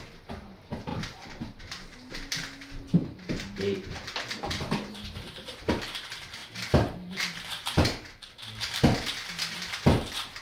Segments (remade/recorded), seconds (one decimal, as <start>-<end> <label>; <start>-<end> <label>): 0.0-0.9 recorded; 0.9-1.6 remade; 1.6-3.0 recorded; 3.0-5.8 remade; 5.8-6.4 recorded; 6.4-8.8 remade; 8.8-10.4 recorded